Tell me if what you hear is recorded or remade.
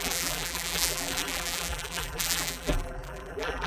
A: remade